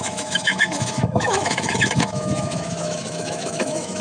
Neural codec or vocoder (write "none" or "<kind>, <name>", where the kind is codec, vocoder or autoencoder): autoencoder, DAC-VAE